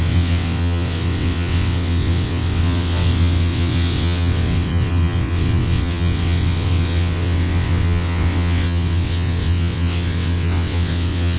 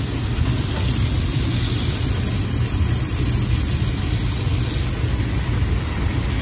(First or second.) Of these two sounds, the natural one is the second